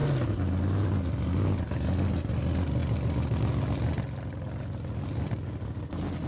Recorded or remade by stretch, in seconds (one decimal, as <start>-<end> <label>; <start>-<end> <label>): 0.0-6.3 recorded